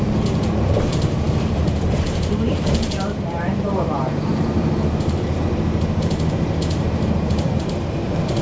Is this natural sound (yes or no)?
no